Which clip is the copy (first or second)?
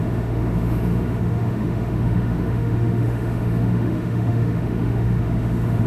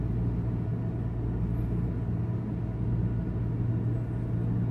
first